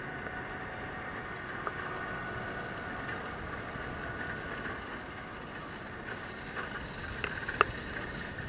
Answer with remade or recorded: recorded